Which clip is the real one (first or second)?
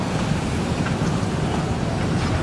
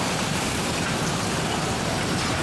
first